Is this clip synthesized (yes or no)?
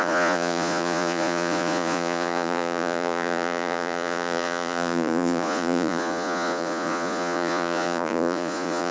yes